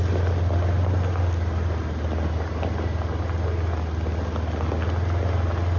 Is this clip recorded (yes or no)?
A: yes